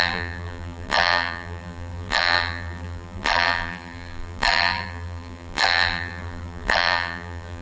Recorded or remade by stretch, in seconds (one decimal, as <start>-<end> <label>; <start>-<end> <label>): 0.0-7.6 remade